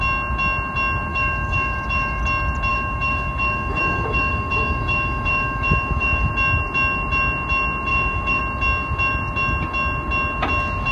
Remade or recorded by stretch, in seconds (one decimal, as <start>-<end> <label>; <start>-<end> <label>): 0.0-1.1 recorded; 1.1-2.2 remade; 2.2-2.7 recorded; 2.7-6.3 remade; 6.3-7.9 recorded; 7.9-8.4 remade; 8.4-10.9 recorded